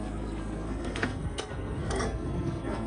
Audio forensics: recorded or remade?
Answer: remade